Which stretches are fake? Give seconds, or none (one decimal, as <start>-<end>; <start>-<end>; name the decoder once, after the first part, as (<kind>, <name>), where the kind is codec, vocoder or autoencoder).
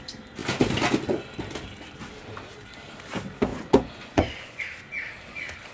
3.5-4.6 (vocoder, Vocos)